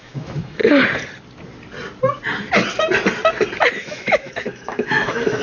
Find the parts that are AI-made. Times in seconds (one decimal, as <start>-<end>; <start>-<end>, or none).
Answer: 0.0-0.6; 3.8-5.4